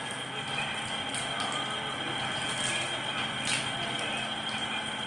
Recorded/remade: recorded